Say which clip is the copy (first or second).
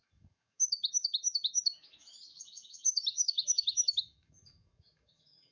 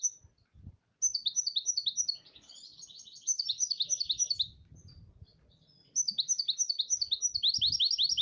first